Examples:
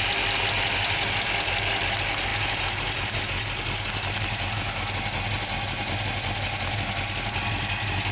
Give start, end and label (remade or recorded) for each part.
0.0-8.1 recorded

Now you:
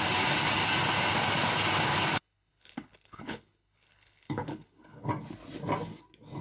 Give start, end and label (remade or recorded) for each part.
0.0-2.1 recorded; 2.1-5.1 remade; 5.1-6.4 recorded